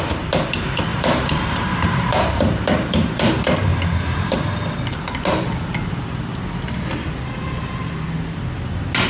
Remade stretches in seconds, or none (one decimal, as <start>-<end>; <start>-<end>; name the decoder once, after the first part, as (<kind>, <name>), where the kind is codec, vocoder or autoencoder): 0.9-3.3 (vocoder, BigVGAN v2); 3.7-4.4; 7.8-8.4